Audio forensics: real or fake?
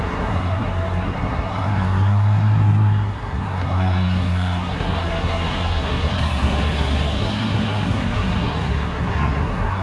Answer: fake